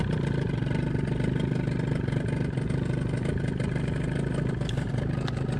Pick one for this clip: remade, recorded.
recorded